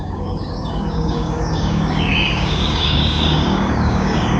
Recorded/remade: remade